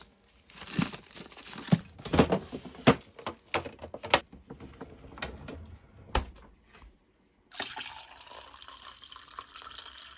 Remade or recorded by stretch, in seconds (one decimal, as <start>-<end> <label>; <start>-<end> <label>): 0.0-10.2 recorded